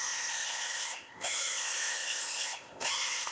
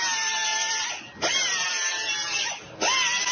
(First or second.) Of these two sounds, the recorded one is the second